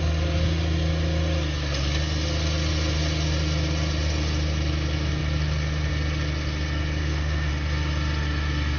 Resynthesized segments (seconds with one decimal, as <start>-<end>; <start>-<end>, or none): 7.0-7.5